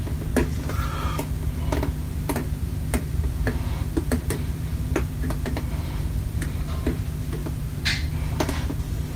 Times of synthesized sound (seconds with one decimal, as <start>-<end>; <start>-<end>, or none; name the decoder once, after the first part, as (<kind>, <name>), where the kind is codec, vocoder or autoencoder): 2.1-7.0 (vocoder, BigVGAN v2); 7.4-8.1